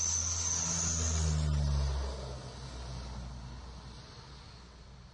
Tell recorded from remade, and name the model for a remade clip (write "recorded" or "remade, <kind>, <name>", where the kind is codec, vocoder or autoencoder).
recorded